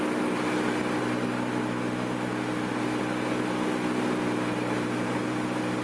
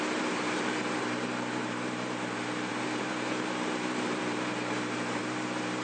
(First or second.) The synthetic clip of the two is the second